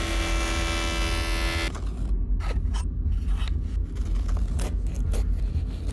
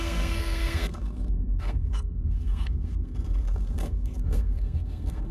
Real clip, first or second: first